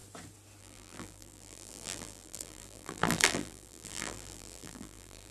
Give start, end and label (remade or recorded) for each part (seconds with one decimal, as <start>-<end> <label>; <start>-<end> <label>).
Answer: 0.0-0.6 recorded; 0.6-5.3 remade